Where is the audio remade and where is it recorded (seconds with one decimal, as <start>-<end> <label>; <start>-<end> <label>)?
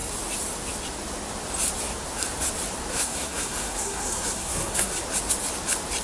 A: 0.0-2.9 recorded; 2.9-5.0 remade; 5.0-6.0 recorded